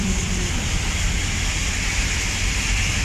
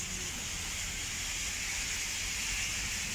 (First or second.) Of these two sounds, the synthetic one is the first